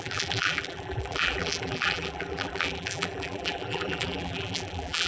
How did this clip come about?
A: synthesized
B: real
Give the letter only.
A